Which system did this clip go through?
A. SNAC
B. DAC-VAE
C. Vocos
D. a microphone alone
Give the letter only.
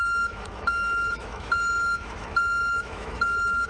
B